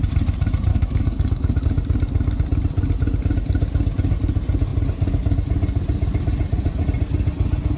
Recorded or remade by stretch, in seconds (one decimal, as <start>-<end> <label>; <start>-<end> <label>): 0.0-0.7 recorded; 0.7-1.6 remade; 1.6-7.8 recorded